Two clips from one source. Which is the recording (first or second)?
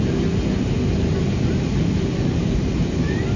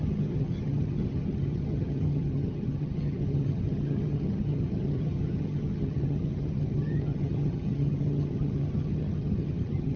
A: first